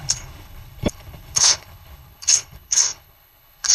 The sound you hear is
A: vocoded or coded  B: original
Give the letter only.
A